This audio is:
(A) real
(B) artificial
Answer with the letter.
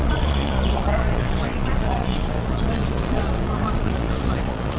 B